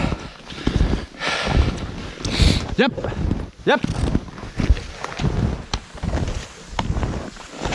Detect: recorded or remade recorded